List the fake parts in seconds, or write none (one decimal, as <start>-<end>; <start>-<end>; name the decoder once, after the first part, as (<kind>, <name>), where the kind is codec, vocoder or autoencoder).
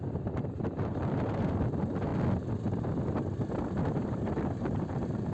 0.0-2.1 (vocoder, BigVGAN v2); 3.6-5.3